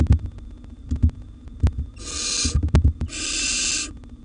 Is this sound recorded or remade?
recorded